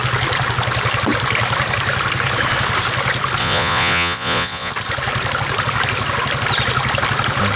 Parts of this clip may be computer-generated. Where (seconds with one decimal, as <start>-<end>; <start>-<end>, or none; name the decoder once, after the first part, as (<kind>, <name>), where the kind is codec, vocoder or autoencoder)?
3.4-4.7 (vocoder, Vocos)